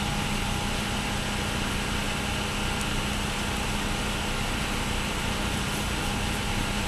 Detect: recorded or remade recorded